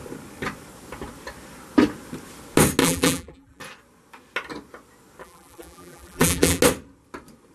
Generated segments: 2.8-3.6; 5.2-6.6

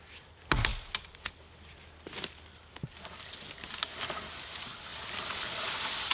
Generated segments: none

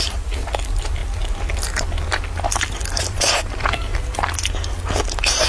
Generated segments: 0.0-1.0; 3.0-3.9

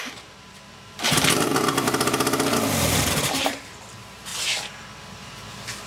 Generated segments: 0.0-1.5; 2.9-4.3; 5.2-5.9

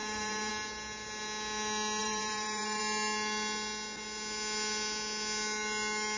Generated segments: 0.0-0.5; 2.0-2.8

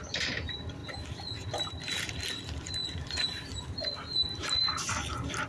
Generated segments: 2.8-4.7

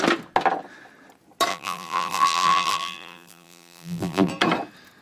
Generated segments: 1.5-4.3

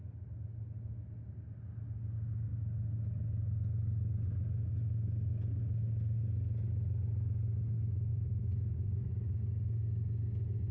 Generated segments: 8.1-9.1